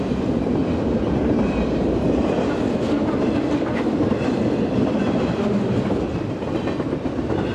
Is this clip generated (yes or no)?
yes